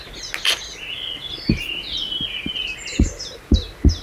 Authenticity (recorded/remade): recorded